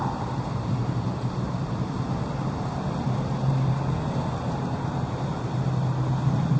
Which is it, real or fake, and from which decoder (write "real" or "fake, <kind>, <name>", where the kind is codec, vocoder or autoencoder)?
fake, vocoder, BigVGAN v2